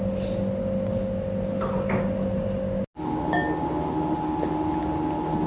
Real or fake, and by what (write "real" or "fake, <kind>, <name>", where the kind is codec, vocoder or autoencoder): real